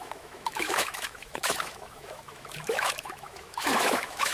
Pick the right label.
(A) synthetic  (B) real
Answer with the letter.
A